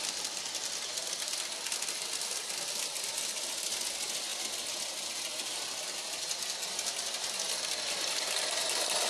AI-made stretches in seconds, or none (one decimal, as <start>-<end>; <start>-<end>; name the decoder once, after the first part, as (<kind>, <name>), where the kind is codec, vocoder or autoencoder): none